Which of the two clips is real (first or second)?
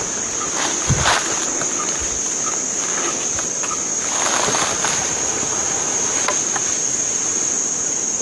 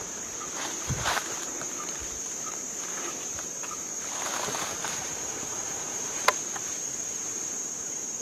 first